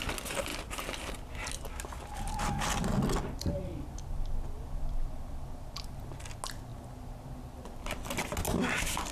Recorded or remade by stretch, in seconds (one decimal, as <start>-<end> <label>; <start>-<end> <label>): 0.0-9.1 recorded